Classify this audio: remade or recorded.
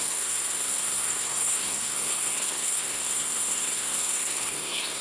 remade